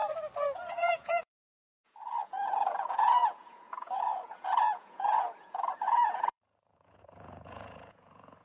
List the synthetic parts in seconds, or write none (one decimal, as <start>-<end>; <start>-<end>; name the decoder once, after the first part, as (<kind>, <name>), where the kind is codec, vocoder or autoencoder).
0.7-8.4 (vocoder, Vocos)